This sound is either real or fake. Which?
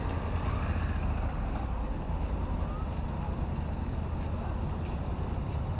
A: real